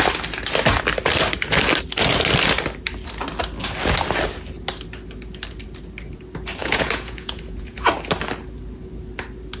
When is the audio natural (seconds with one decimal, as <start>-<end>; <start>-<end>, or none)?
0.0-6.6; 7.8-9.6